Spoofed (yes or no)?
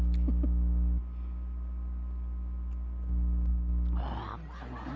no